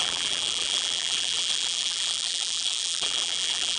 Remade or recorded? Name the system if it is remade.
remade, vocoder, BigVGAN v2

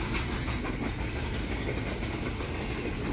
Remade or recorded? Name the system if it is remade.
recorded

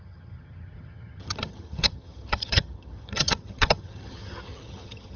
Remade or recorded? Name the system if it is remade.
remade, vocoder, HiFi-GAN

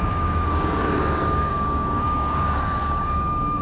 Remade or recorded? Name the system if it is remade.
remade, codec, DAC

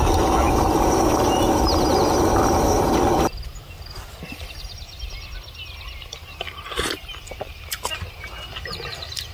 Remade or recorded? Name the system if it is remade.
recorded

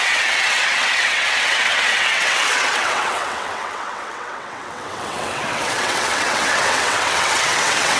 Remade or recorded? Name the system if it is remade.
remade, vocoder, WaveNeXt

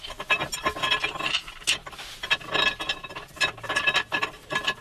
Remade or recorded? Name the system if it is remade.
recorded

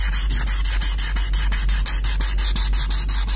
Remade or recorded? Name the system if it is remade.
recorded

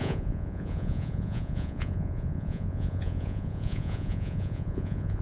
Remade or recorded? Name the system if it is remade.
remade, vocoder, Vocos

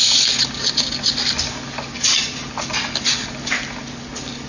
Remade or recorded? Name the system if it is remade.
recorded